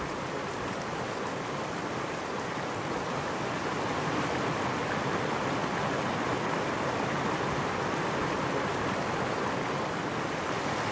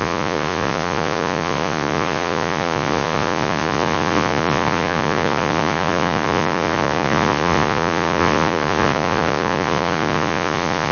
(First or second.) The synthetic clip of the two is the second